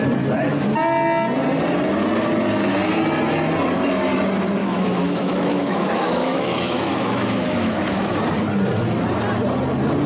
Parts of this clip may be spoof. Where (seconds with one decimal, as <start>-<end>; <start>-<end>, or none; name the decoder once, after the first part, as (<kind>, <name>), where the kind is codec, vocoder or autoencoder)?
4.6-8.2 (autoencoder, DAC-VAE)